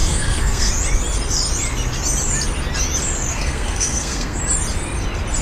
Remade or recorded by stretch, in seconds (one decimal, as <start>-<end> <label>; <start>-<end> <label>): 0.0-0.7 remade; 0.7-3.3 recorded; 3.3-4.4 remade; 4.4-5.4 recorded